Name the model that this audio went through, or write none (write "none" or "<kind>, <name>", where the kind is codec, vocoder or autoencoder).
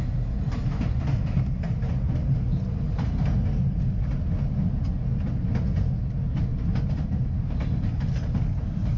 none